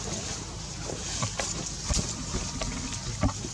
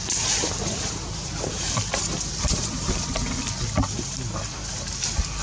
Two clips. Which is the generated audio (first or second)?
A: second